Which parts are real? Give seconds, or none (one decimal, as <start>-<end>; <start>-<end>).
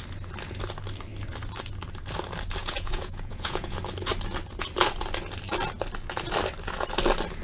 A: 0.0-2.6; 3.8-7.4